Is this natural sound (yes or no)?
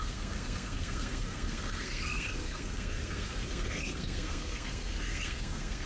no